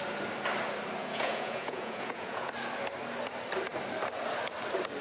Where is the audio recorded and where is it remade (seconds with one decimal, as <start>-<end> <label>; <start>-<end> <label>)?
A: 0.0-1.0 recorded; 1.0-2.5 remade; 2.5-5.0 recorded